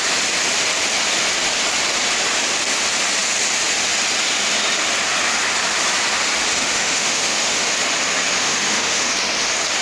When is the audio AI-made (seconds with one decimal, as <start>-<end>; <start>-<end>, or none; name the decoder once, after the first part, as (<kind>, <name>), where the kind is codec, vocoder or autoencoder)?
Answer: 6.6-7.7 (autoencoder, DAC-VAE); 8.4-9.1